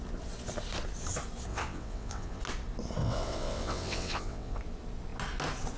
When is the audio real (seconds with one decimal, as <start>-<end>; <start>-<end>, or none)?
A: 0.0-1.5; 2.4-3.0; 4.6-5.8